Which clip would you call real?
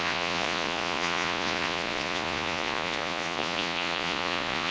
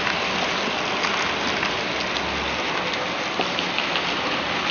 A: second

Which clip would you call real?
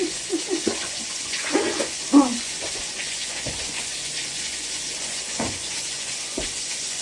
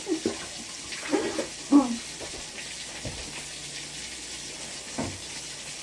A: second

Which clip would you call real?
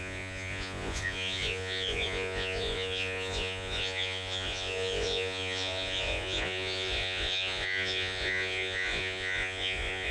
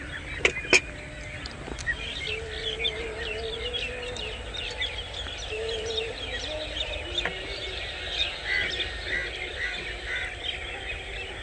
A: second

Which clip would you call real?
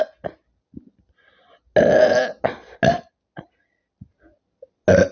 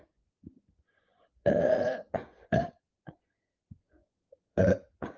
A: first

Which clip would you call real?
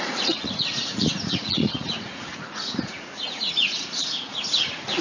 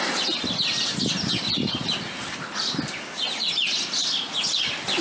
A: second